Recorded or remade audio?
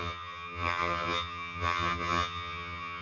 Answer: remade